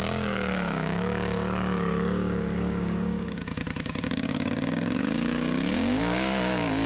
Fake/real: fake